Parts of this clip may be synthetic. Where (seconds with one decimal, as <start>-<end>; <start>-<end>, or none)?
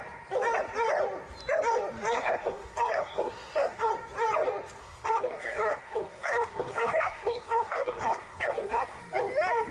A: 2.1-3.9; 4.8-9.0